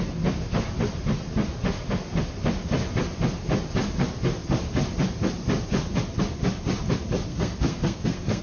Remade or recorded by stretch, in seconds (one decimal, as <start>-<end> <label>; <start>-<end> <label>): 0.0-7.3 recorded; 7.3-8.4 remade